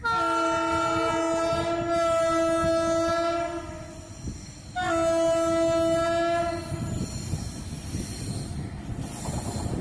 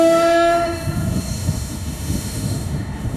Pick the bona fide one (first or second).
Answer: first